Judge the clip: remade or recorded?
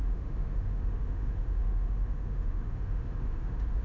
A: remade